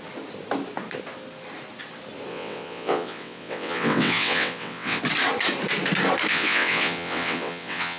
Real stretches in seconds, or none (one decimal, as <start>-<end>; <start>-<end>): 0.0-2.3; 5.0-6.3